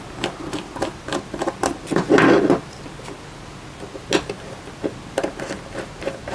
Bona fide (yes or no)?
yes